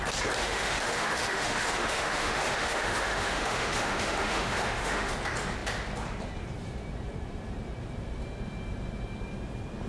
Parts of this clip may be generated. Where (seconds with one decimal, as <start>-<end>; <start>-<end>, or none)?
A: 0.4-5.1